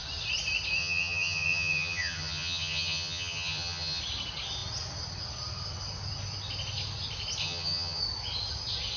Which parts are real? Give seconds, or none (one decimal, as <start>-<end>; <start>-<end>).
0.0-0.8; 4.0-7.4; 8.0-9.0